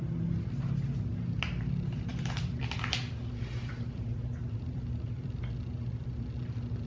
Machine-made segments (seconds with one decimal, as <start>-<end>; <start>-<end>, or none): 2.1-6.2